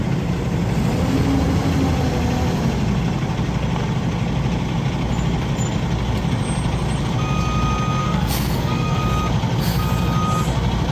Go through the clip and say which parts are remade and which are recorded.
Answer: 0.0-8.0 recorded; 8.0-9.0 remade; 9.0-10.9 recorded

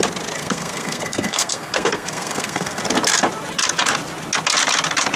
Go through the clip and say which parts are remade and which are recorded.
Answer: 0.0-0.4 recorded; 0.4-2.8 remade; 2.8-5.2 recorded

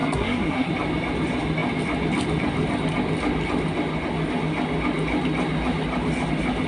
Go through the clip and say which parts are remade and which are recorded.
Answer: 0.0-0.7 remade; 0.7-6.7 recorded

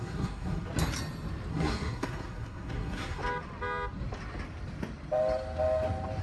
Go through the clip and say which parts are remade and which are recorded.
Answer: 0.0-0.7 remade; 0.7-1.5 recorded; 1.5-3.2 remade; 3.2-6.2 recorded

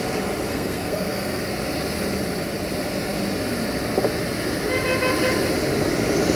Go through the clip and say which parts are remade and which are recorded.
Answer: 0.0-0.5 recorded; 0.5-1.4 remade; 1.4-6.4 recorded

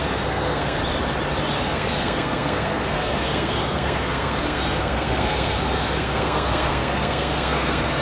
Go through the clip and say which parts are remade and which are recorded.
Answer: 0.0-0.8 remade; 0.8-1.6 recorded; 1.6-8.0 remade

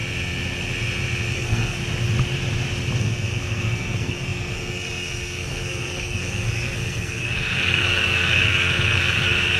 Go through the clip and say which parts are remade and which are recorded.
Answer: 0.0-1.3 recorded; 1.3-1.8 remade; 1.8-3.0 recorded; 3.0-9.6 remade

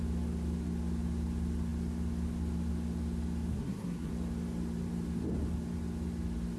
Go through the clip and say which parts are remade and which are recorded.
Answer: 0.0-3.5 recorded; 3.5-4.1 remade; 4.1-6.6 recorded